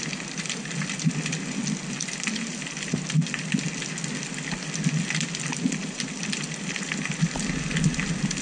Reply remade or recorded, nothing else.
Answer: recorded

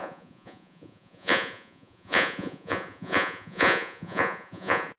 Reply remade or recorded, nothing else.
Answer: remade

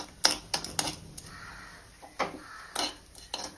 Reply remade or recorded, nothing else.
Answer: recorded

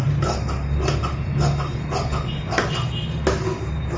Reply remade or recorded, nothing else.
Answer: recorded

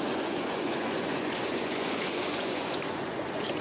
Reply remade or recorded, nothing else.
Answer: remade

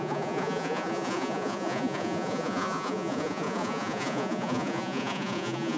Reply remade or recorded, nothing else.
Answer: remade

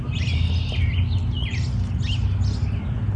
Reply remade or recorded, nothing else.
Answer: recorded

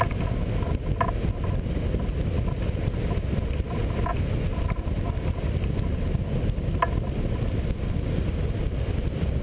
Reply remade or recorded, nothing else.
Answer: recorded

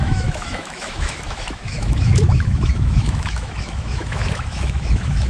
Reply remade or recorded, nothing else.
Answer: remade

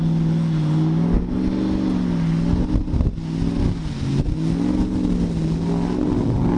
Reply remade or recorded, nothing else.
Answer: recorded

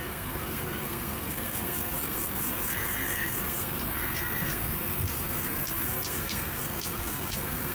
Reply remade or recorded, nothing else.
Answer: remade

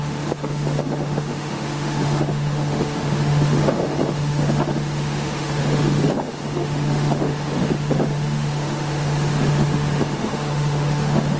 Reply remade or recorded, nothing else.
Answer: remade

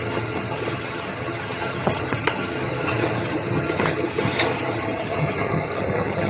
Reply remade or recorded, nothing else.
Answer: remade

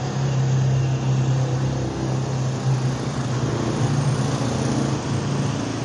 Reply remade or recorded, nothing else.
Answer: recorded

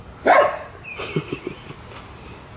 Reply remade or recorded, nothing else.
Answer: recorded